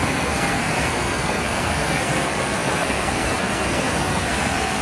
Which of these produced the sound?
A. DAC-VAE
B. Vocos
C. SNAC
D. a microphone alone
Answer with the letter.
C